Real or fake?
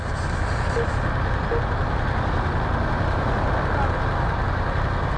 real